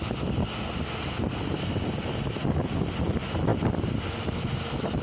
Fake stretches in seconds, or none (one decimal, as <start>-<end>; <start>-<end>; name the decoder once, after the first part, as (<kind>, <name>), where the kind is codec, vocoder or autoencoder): 3.0-5.0 (vocoder, BigVGAN v2)